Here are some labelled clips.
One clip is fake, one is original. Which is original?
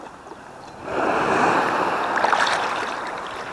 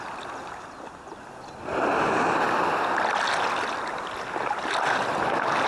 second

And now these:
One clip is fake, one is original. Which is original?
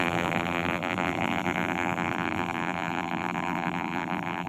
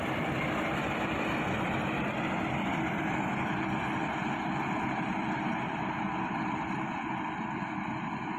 second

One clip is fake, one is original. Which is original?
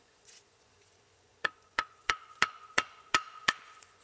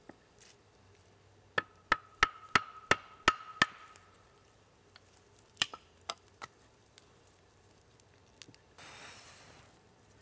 second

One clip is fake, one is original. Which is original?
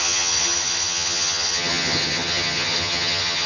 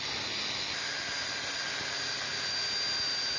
second